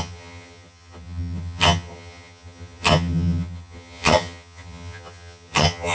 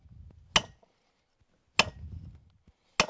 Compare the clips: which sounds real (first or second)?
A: second